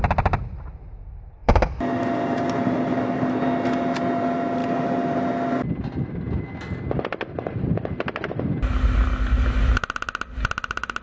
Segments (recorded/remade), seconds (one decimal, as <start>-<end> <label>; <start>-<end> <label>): 0.0-11.0 recorded